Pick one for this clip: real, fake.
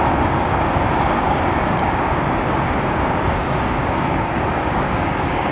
fake